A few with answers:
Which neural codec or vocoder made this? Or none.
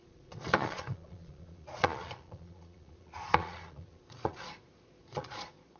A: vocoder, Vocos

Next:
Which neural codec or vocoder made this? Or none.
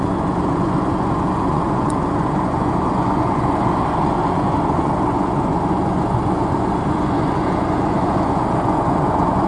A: vocoder, Vocos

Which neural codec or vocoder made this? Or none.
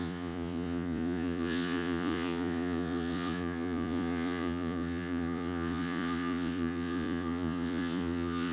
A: vocoder, Vocos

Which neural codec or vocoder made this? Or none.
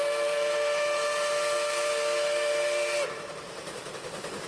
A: none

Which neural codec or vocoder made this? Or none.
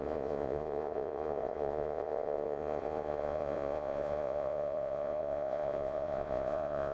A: vocoder, Vocos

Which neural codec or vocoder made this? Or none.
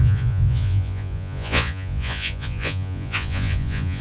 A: vocoder, Vocos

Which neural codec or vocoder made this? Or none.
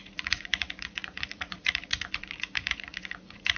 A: vocoder, Vocos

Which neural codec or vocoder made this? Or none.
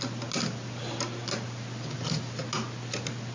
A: none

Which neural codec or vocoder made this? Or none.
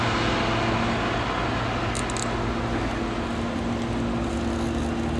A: none